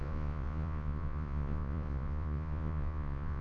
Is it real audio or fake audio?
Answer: fake